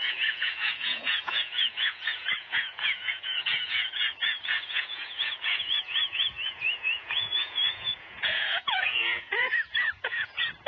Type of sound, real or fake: fake